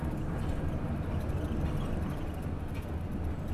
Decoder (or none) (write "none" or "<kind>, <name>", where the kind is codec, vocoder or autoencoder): none